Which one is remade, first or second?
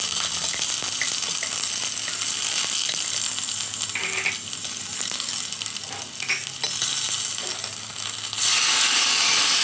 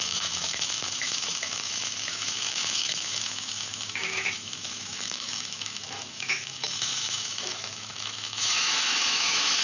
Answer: second